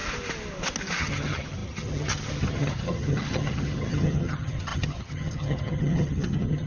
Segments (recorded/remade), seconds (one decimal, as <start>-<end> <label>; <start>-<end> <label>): 0.0-1.0 recorded; 1.0-6.7 remade